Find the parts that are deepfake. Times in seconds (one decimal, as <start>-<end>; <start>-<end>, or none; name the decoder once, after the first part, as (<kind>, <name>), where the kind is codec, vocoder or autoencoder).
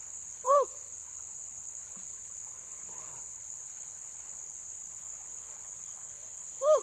0.0-6.8 (codec, HILCodec)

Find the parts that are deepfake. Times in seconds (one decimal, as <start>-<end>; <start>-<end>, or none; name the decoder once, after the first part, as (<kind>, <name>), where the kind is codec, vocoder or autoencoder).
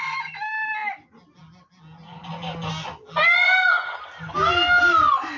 none